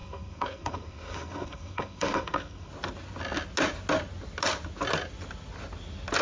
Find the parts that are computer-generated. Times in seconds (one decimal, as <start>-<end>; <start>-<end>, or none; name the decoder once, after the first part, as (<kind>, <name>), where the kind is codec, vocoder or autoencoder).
0.0-2.7 (codec, SNAC)

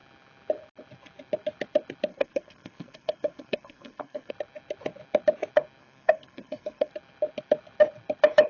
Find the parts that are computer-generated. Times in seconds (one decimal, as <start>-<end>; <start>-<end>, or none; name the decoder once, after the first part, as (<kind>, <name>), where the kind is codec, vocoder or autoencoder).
2.1-4.3 (codec, SNAC); 5.8-6.9

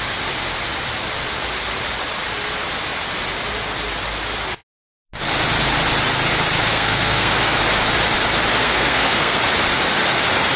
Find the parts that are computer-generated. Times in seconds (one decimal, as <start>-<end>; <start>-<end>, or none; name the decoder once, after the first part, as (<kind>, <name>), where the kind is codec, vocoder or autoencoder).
6.7-7.6 (codec, SNAC); 8.5-9.4

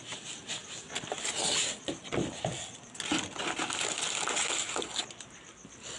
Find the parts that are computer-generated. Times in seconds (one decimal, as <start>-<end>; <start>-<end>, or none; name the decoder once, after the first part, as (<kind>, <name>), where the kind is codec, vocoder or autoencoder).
none

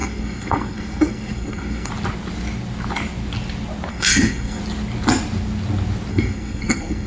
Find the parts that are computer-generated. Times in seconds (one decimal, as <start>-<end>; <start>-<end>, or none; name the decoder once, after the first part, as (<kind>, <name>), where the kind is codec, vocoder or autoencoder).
0.0-1.9 (codec, SNAC); 3.9-4.6; 6.1-7.1

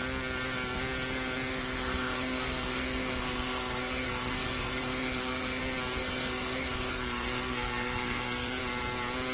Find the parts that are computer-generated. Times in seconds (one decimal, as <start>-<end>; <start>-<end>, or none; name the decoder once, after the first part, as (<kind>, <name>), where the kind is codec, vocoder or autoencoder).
1.5-5.6 (codec, SNAC); 6.0-8.6

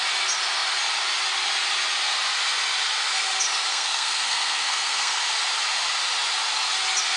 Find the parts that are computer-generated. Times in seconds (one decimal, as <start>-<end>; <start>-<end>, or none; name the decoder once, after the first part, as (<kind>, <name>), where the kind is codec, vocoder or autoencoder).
3.7-5.2 (codec, SNAC)

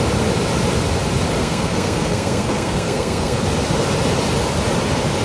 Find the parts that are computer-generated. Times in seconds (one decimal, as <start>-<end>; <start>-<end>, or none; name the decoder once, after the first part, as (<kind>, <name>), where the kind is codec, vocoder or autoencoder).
1.4-3.4 (codec, SNAC)